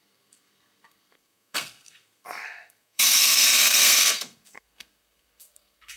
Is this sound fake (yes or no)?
yes